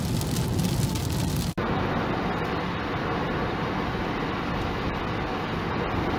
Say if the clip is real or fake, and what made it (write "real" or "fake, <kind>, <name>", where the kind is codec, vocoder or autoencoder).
real